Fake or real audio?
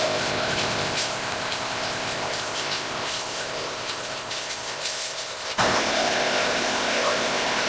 fake